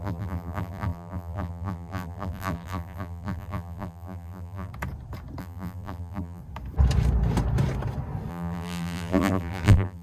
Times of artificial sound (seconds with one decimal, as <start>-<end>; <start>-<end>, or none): 0.0-4.7; 5.4-6.4; 8.3-10.0